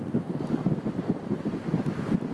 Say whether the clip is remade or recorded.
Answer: remade